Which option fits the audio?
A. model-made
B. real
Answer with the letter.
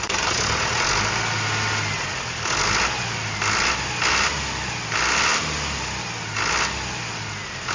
B